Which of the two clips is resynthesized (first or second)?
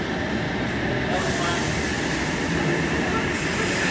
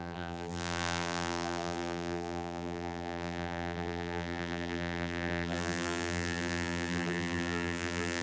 second